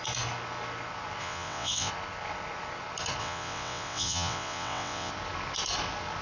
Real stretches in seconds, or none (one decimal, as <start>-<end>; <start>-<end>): 0.0-1.2; 1.9-3.2; 5.1-6.2